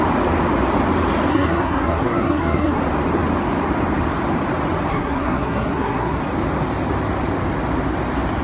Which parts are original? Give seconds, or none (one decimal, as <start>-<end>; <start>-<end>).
0.0-1.3; 2.8-4.9; 6.2-8.4